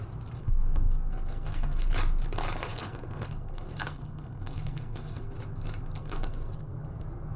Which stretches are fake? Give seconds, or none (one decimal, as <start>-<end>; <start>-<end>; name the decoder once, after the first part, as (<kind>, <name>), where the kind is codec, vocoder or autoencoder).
0.4-1.9 (codec, SNAC); 2.7-5.3; 6.0-7.0